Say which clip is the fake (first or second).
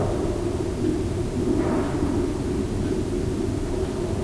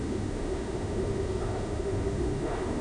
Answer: second